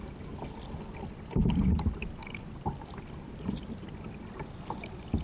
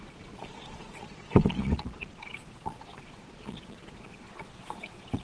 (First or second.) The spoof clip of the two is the second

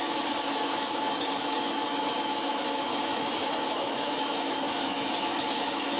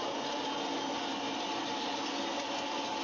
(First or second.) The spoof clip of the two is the first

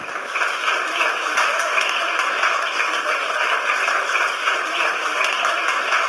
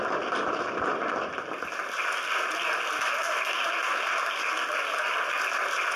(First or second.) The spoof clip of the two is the first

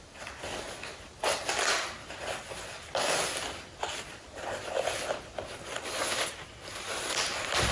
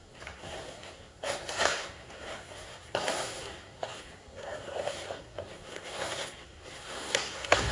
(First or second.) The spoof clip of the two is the second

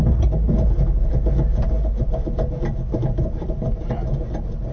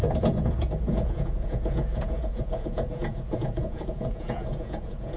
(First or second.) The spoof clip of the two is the second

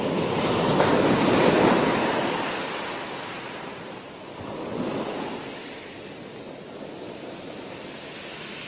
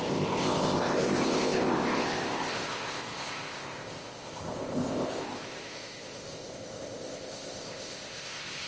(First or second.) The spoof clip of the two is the second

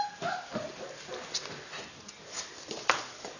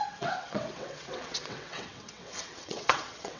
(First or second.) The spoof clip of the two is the second